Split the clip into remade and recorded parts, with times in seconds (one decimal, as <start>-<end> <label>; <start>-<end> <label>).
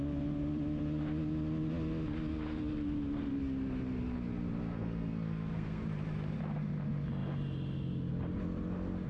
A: 0.0-4.6 recorded; 4.6-5.8 remade; 5.8-9.1 recorded